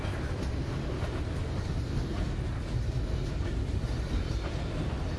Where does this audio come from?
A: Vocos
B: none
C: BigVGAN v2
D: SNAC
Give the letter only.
B